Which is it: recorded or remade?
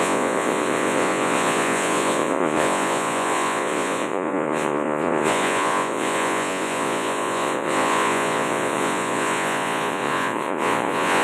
remade